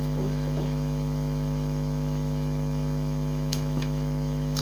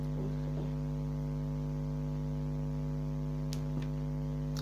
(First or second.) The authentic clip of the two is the second